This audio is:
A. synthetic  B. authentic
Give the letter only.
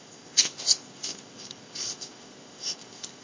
A